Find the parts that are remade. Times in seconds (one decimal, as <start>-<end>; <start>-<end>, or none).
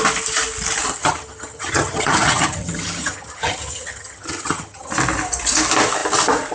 1.0-4.9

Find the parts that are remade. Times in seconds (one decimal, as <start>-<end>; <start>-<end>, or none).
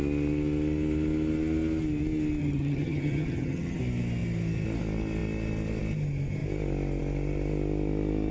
2.4-3.8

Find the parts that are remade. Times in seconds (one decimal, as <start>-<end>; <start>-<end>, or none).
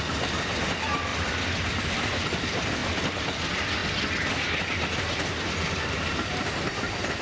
0.0-2.8; 3.4-3.8; 5.5-7.2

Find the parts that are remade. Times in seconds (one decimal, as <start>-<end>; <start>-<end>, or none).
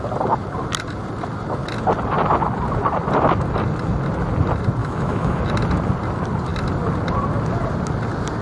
4.8-5.4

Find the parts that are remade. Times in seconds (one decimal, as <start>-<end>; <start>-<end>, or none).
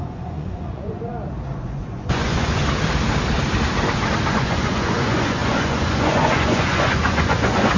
0.0-1.1; 1.6-2.6; 4.3-7.8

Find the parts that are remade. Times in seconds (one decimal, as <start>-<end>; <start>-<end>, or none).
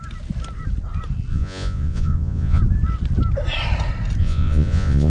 1.3-2.6; 4.2-5.1